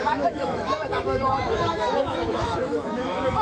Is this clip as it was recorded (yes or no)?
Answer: no